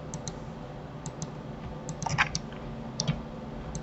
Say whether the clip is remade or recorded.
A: recorded